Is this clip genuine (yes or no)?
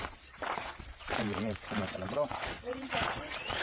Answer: no